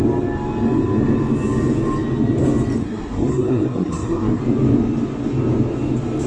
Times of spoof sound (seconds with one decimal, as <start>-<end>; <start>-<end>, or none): 2.8-4.4